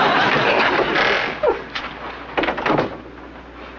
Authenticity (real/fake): real